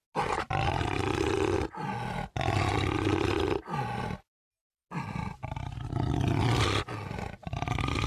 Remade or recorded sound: recorded